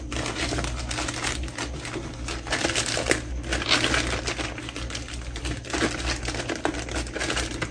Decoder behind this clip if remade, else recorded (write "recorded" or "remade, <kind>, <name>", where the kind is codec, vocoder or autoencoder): recorded